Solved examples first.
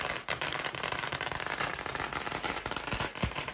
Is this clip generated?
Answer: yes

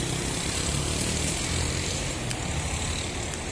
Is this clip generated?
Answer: yes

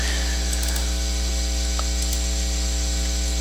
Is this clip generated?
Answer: no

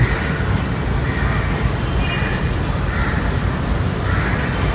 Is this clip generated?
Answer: no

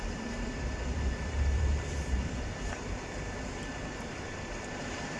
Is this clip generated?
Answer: yes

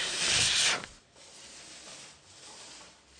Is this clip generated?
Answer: no